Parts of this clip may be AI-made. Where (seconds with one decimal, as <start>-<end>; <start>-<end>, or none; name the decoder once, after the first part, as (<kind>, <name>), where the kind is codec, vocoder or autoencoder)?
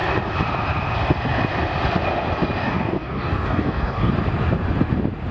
2.6-4.1 (codec, DAC)